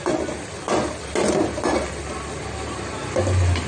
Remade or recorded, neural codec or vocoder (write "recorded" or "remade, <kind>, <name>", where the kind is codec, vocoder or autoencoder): recorded